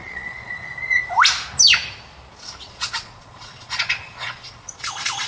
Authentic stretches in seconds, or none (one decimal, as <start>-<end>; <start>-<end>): 0.5-2.6